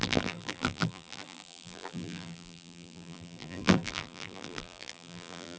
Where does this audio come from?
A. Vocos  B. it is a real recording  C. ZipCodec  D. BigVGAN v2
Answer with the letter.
D